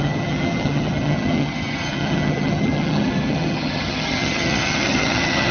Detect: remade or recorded remade